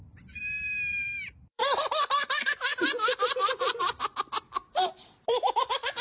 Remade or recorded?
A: remade